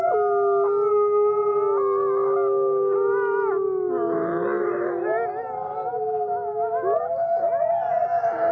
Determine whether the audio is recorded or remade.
recorded